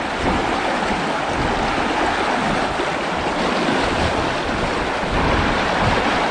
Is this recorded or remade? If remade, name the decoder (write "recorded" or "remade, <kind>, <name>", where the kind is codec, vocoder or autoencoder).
recorded